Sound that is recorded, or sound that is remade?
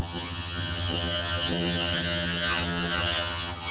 remade